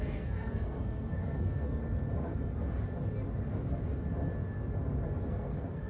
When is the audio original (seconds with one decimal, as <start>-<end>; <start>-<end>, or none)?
1.8-5.3